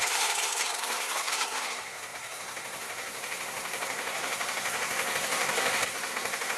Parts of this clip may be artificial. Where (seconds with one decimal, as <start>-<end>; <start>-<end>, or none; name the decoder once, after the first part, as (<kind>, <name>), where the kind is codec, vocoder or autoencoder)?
0.0-6.6 (codec, SNAC)